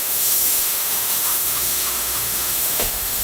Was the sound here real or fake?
fake